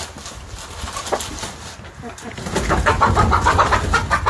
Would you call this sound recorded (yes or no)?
yes